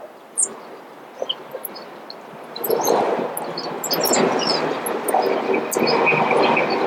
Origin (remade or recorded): recorded